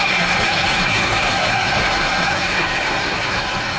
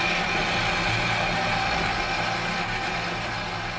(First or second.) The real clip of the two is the second